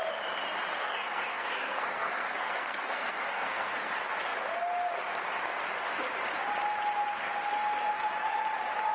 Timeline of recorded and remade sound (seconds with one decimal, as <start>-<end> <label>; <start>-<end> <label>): 0.0-0.8 recorded; 0.8-3.9 remade; 3.9-8.9 recorded